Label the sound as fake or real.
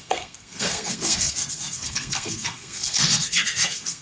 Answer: fake